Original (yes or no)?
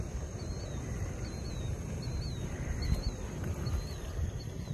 yes